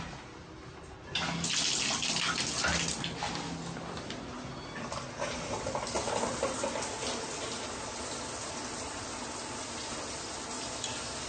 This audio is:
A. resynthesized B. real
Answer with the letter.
B